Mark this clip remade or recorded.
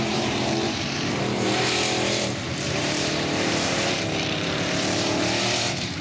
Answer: remade